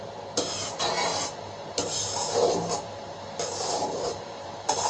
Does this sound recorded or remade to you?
remade